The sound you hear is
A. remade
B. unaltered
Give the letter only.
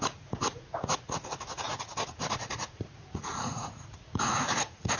A